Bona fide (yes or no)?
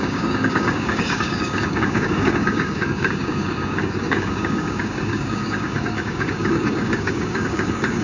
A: no